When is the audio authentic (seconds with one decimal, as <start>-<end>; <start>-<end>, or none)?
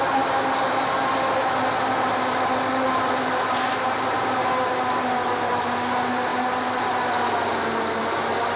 0.0-8.6